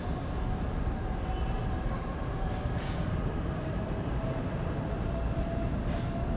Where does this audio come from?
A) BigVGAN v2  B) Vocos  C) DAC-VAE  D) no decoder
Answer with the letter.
D